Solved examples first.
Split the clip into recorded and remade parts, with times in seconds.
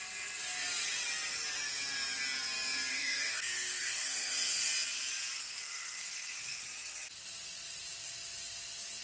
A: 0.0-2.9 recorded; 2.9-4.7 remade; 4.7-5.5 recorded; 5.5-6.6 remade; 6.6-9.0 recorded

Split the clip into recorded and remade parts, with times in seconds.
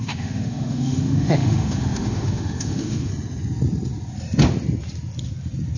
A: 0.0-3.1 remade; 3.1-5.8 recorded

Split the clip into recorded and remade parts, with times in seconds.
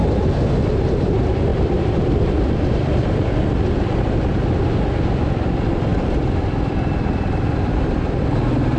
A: 0.0-1.5 recorded; 1.5-4.1 remade; 4.1-5.9 recorded; 5.9-7.4 remade; 7.4-8.8 recorded